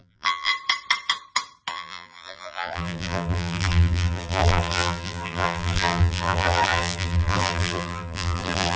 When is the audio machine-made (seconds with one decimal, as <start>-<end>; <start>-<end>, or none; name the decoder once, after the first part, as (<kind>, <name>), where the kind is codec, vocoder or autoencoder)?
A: 0.0-0.5 (vocoder, BigVGAN v2); 1.7-8.8